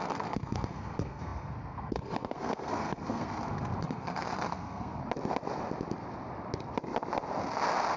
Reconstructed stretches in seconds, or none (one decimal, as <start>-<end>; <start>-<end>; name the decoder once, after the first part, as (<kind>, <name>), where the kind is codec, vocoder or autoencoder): 0.0-5.0 (codec, SNAC)